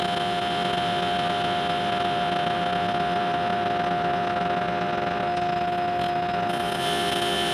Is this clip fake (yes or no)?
no